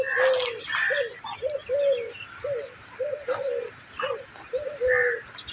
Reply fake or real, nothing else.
real